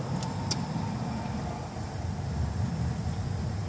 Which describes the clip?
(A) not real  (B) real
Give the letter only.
B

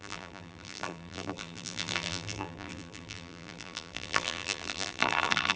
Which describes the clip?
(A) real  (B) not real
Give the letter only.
B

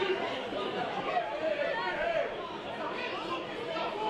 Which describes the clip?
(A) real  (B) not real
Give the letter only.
B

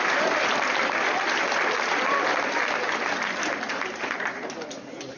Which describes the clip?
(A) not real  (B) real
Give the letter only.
A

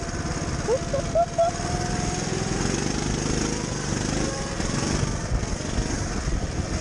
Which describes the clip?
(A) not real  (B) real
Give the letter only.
B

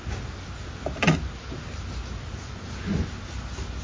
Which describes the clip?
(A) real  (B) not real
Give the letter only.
A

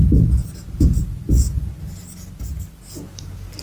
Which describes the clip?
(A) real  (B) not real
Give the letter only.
A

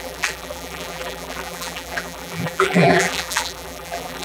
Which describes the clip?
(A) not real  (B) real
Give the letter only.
A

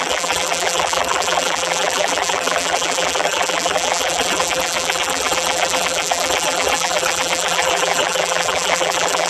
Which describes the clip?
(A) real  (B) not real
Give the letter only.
B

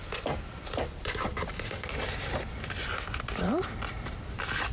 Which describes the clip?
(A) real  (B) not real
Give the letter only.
B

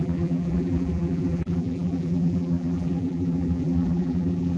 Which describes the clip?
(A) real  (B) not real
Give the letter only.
B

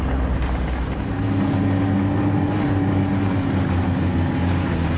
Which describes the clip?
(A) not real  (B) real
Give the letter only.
B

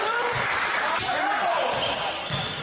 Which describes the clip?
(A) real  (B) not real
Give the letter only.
B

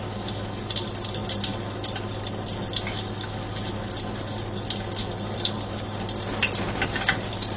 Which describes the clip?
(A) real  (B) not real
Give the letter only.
A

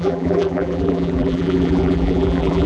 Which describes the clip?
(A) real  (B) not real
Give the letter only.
B